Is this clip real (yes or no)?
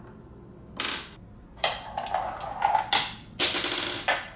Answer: yes